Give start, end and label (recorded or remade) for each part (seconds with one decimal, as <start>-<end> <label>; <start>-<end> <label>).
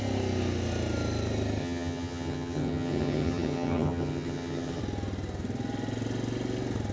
0.0-1.6 recorded; 1.6-4.8 remade; 4.8-6.9 recorded